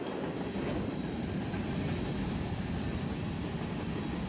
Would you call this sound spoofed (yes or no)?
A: no